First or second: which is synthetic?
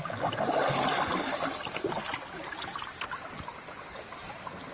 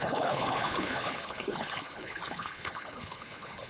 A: second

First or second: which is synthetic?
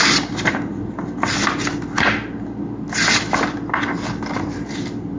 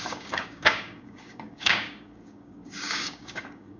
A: second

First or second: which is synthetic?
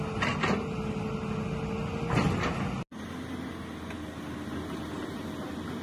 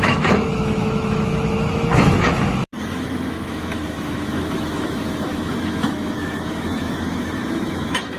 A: second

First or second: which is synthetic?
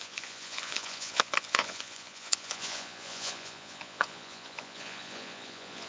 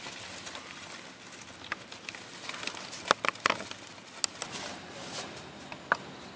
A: first